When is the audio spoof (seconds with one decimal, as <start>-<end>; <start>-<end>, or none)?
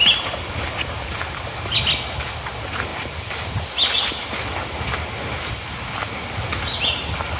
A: none